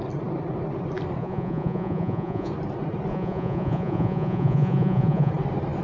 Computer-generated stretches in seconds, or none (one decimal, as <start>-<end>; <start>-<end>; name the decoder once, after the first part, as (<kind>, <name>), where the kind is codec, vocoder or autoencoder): 1.2-2.5 (vocoder, Vocos); 3.1-5.3